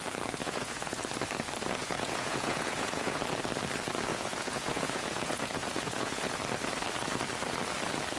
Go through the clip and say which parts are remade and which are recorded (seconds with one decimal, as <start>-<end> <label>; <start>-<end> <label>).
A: 0.0-0.4 recorded; 0.4-1.0 remade; 1.0-1.8 recorded; 1.8-3.2 remade; 3.2-4.1 recorded; 4.1-6.4 remade; 6.4-8.2 recorded